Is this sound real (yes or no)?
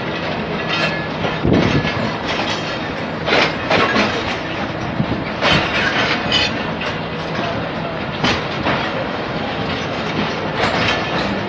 yes